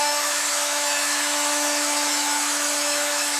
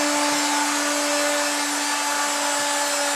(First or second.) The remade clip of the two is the first